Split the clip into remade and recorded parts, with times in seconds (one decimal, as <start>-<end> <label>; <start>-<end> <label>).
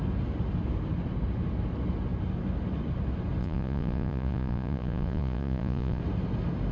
0.0-3.4 recorded; 3.4-6.0 remade; 6.0-6.7 recorded